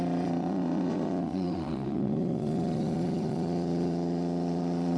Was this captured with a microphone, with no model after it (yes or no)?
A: no